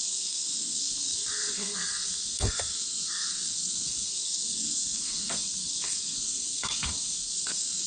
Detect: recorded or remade remade